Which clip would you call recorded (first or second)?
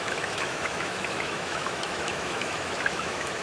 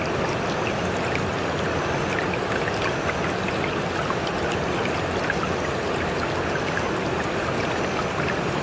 second